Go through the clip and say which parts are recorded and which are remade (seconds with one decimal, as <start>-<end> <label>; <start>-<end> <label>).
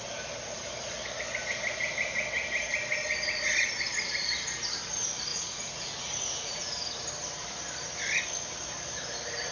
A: 0.0-5.3 recorded; 5.3-6.7 remade; 6.7-9.5 recorded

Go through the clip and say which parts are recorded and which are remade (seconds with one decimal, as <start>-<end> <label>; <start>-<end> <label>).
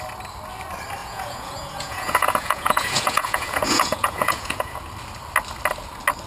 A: 0.0-1.0 recorded; 1.0-4.8 remade; 4.8-6.3 recorded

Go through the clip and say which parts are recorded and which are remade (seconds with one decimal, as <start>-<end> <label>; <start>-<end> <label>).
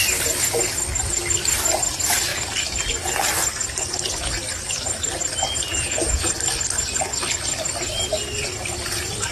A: 0.0-5.7 recorded; 5.7-6.3 remade; 6.3-9.3 recorded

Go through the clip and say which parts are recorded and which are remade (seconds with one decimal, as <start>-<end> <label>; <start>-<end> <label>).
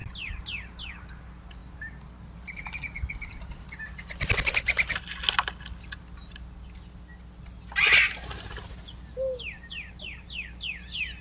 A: 0.0-11.2 recorded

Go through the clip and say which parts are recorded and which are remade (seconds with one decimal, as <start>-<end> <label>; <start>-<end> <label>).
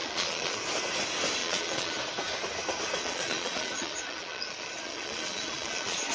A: 0.0-0.6 remade; 0.6-1.4 recorded; 1.4-2.0 remade; 2.0-3.0 recorded; 3.0-6.1 remade